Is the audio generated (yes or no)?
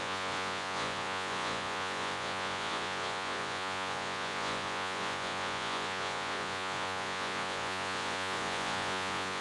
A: yes